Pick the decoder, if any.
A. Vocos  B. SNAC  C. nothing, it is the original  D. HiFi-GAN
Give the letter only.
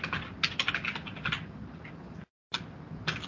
C